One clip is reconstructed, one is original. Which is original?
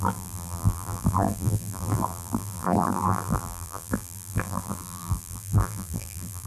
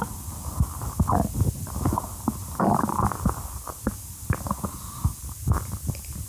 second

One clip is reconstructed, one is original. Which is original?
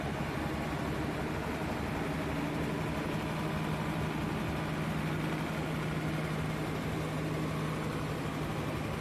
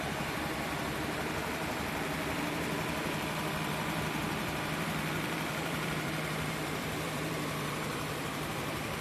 first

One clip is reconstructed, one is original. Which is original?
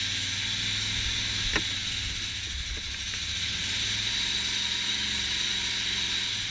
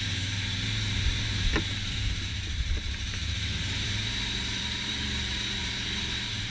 first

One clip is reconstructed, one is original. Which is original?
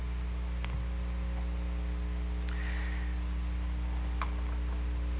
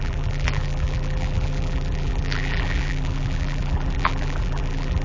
first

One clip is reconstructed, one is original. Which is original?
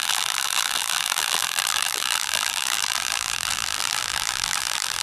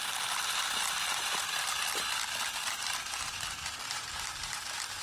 second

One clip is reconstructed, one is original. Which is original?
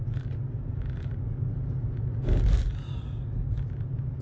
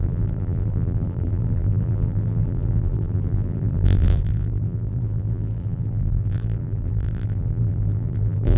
first